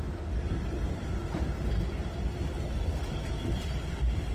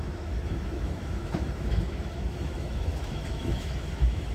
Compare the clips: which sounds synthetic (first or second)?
second